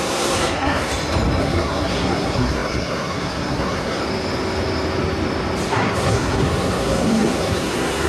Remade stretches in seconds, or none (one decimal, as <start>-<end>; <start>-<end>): 0.0-0.9; 1.4-4.0; 5.7-8.1